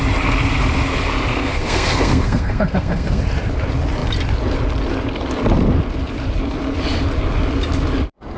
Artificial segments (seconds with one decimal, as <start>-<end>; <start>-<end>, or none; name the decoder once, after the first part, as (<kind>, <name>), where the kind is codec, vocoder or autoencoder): 1.3-3.2 (codec, SNAC)